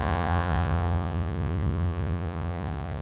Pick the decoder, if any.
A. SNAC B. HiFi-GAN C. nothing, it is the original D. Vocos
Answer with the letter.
D